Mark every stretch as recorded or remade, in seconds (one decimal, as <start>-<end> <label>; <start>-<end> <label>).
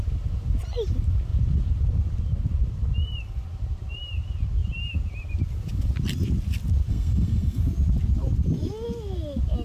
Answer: 0.0-6.9 recorded; 6.9-7.6 remade; 7.6-9.6 recorded